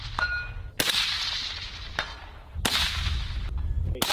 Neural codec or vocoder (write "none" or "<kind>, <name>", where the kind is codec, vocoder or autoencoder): none